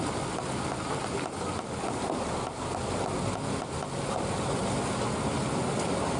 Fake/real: real